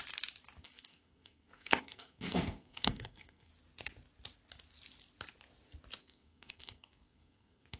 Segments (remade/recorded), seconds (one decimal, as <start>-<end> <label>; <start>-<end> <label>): 0.0-0.6 recorded; 0.6-3.5 remade; 3.5-6.0 recorded; 6.0-7.8 remade